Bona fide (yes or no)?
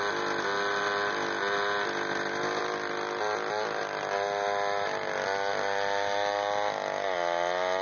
yes